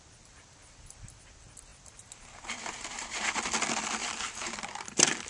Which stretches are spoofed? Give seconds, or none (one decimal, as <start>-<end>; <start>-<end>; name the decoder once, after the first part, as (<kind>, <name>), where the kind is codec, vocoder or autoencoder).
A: 1.7-3.3 (vocoder, BigVGAN v2); 4.0-4.6